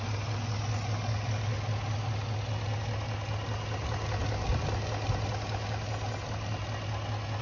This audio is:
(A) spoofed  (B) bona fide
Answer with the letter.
B